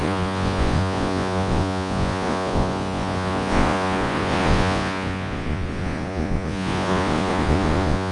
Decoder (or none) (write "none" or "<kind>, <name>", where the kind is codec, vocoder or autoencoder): vocoder, Vocos